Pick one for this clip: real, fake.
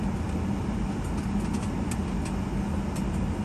real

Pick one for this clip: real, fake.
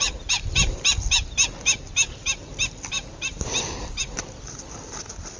real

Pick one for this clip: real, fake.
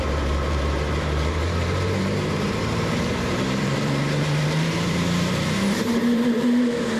fake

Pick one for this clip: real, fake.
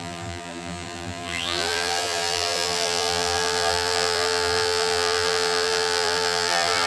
fake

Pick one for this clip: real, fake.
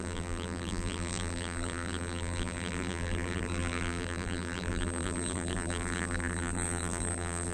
fake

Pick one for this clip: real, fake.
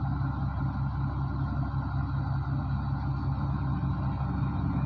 real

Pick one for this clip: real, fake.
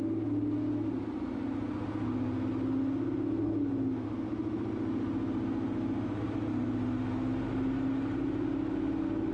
real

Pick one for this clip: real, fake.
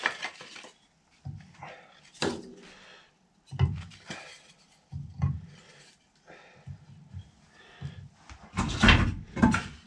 real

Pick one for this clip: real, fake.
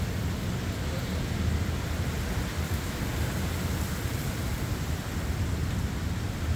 real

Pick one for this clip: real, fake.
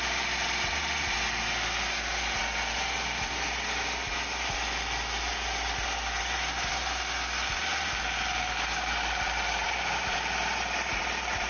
real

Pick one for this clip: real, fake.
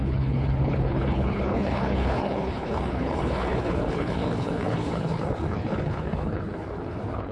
fake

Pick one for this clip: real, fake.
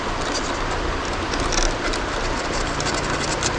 real